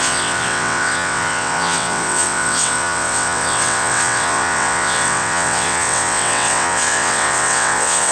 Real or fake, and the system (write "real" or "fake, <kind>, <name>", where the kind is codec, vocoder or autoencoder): fake, vocoder, WaveNeXt